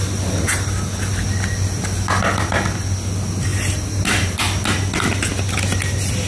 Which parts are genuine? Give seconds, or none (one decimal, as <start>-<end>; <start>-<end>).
0.0-3.5; 4.4-6.3